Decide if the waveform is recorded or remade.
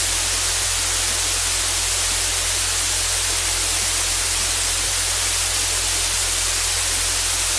recorded